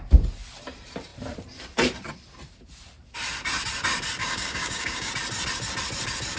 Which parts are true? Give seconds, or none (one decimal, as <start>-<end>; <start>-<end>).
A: 0.0-4.2; 5.1-6.4

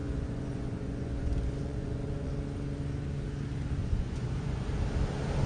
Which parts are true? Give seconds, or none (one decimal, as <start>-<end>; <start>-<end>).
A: 2.3-3.8; 4.7-5.5

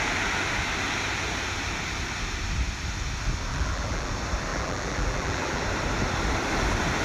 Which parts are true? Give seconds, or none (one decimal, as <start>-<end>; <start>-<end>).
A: 0.0-3.5; 4.1-4.5; 5.6-7.0

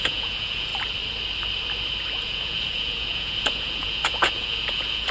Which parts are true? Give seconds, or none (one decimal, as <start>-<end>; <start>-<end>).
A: 0.7-2.2

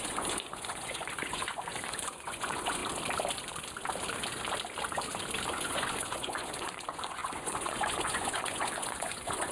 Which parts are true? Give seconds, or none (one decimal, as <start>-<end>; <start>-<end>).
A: 2.8-5.5

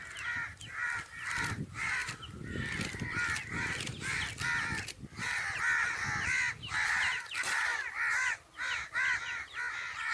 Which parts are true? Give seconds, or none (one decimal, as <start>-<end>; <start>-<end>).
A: 0.0-7.7; 9.7-10.1